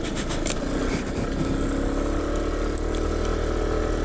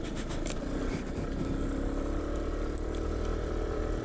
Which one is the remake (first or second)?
second